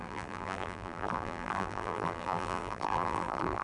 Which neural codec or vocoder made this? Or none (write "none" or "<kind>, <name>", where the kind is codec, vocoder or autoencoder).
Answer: vocoder, BigVGAN v2